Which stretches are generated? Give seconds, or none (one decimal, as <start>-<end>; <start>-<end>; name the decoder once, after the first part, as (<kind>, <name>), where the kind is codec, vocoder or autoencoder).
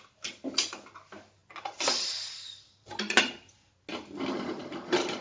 none